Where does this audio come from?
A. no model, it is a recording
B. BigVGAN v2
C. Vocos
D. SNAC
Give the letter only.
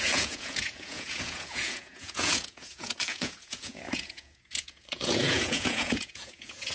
C